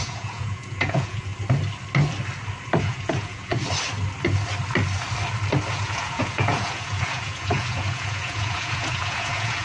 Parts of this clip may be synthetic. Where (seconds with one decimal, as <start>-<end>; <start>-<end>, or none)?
0.0-1.3; 2.8-3.5; 5.7-9.6